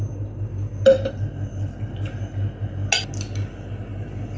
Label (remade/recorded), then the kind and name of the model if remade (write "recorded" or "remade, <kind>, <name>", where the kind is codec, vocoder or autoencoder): recorded